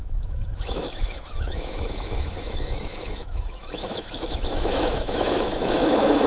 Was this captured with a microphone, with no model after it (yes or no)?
no